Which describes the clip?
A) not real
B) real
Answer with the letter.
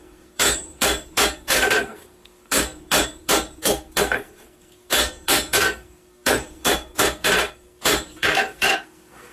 A